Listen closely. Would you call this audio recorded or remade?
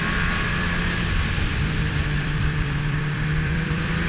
remade